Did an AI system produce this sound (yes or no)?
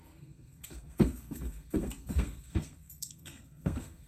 yes